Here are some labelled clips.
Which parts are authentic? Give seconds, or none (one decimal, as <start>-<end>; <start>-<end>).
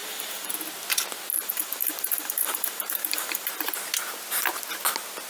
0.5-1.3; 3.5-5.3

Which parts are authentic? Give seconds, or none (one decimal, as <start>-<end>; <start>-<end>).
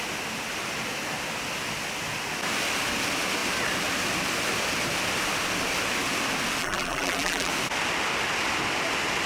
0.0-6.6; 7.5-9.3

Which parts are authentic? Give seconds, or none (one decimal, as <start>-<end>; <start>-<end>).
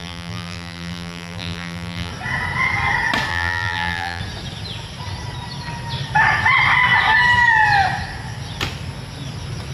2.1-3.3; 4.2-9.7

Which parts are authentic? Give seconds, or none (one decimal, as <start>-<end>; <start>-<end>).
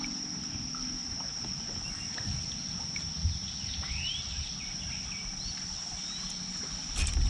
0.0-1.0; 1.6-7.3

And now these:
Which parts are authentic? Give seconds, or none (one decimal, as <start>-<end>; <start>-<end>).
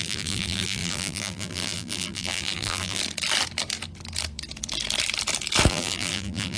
3.0-5.7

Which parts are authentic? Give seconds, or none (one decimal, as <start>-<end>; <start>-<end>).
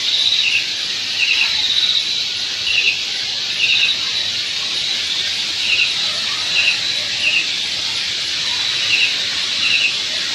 0.0-10.3